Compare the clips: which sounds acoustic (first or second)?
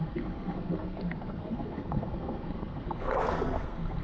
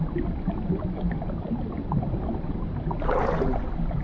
second